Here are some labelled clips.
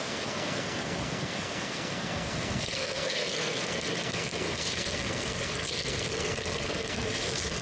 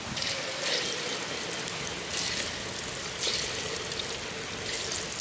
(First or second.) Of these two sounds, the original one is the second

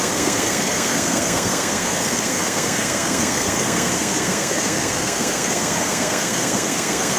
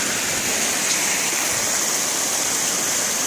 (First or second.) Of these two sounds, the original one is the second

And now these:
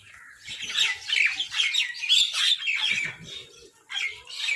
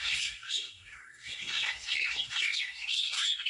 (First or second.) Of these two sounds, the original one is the first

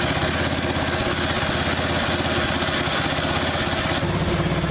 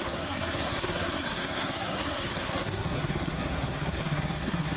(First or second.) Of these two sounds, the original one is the first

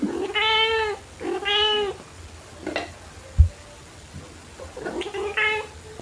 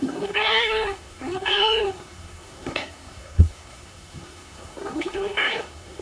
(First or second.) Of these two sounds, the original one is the first